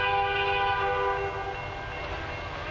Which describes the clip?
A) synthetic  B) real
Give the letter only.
B